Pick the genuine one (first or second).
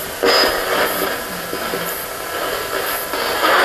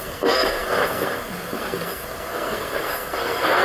first